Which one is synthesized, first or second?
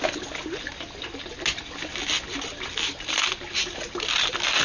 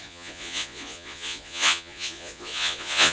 second